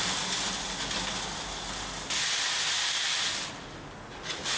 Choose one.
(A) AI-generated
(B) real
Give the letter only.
B